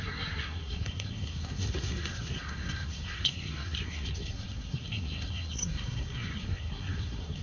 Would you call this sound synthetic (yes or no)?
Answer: yes